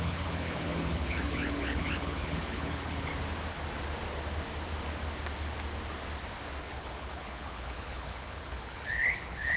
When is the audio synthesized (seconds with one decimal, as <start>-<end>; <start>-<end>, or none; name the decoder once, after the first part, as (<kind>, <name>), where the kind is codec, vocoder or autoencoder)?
0.0-3.1 (codec, HILCodec); 6.6-9.6